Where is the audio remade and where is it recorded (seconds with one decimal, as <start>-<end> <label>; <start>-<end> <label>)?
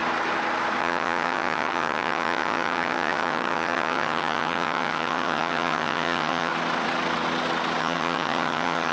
0.0-0.8 recorded; 0.8-6.5 remade; 6.5-7.8 recorded; 7.8-8.9 remade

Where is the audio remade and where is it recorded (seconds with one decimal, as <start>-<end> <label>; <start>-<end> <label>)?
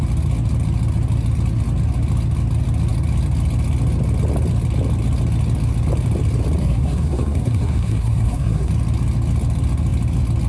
0.0-6.6 recorded; 6.6-8.7 remade; 8.7-10.5 recorded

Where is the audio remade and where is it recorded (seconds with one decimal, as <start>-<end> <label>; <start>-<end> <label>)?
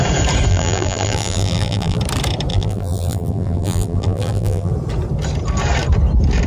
0.0-0.5 recorded; 0.5-2.0 remade; 2.0-2.5 recorded; 2.5-4.7 remade; 4.7-6.5 recorded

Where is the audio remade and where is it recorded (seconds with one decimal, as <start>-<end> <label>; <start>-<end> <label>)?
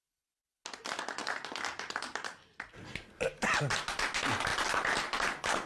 0.0-1.2 recorded; 1.2-3.6 remade; 3.6-4.5 recorded; 4.5-5.7 remade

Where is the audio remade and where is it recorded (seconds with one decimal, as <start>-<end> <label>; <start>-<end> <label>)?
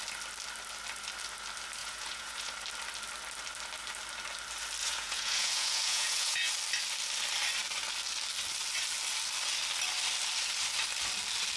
0.0-1.8 recorded; 1.8-2.5 remade; 2.5-4.8 recorded; 4.8-6.5 remade; 6.5-11.6 recorded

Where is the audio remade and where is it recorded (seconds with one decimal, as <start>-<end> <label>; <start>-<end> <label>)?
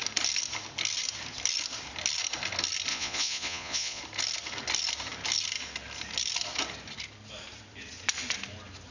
0.0-2.9 recorded; 2.9-4.0 remade; 4.0-8.9 recorded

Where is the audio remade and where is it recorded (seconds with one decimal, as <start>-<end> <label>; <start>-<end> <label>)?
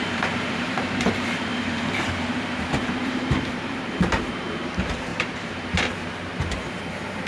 0.0-7.3 remade